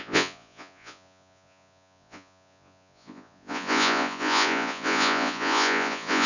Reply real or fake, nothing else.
fake